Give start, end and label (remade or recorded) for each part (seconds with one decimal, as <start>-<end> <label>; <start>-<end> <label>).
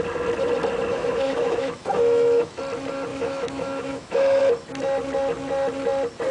0.0-0.9 recorded; 0.9-2.6 remade; 2.6-3.1 recorded; 3.1-4.4 remade; 4.4-6.3 recorded